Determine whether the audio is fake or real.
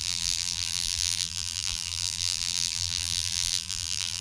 fake